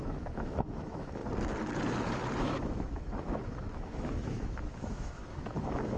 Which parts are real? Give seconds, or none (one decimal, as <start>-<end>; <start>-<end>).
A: 1.2-2.4